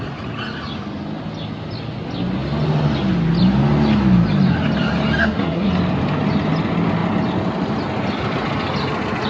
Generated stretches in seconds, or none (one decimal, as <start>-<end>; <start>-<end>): 5.2-5.7